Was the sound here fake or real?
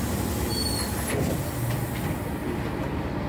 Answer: real